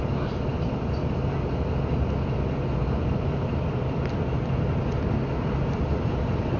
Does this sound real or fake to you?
real